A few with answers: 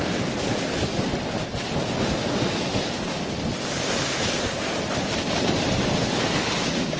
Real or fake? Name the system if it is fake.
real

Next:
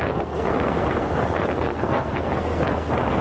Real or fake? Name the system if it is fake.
fake, codec, SNAC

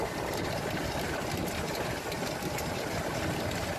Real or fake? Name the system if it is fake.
real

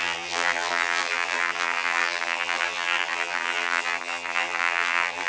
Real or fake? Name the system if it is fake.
fake, vocoder, BigVGAN v2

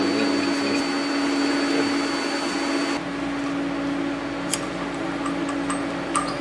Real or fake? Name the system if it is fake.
real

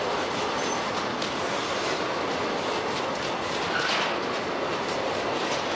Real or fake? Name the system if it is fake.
real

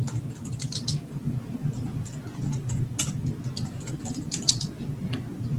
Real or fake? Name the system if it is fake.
real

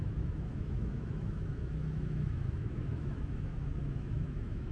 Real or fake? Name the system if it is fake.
fake, autoencoder, DAC-VAE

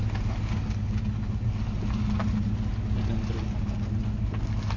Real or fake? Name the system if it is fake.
real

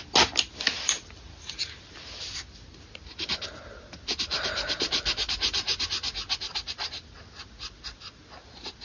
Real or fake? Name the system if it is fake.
real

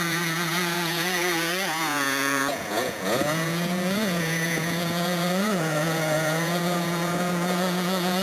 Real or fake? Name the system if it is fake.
fake, vocoder, Vocos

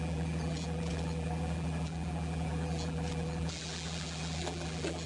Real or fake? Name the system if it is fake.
fake, vocoder, BigVGAN v2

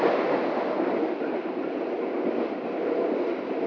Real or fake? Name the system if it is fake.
real